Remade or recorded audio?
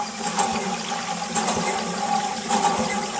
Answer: recorded